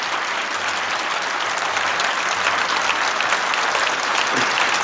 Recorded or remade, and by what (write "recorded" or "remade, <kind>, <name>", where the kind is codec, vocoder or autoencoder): recorded